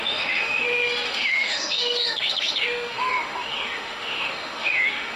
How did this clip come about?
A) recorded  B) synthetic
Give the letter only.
B